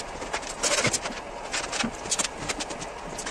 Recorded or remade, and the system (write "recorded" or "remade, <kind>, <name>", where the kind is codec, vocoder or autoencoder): remade, vocoder, BigVGAN v2